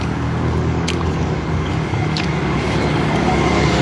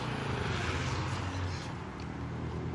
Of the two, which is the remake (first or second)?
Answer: first